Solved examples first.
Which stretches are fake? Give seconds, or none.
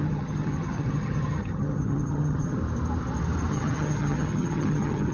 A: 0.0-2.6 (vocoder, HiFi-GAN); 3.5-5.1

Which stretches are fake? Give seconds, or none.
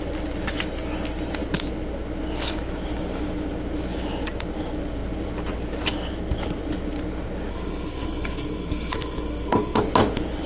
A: 7.5-9.8 (codec, SNAC)